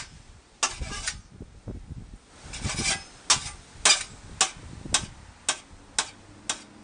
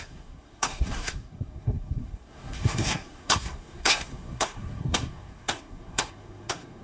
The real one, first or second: first